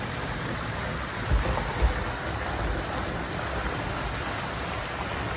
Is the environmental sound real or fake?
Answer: real